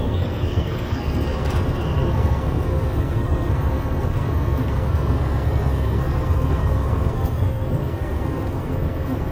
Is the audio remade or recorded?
remade